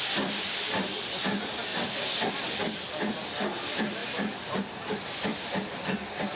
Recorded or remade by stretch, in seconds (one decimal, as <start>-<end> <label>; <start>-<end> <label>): 0.0-1.7 remade; 1.7-2.3 recorded; 2.3-6.4 remade